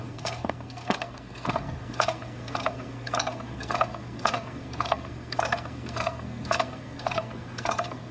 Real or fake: fake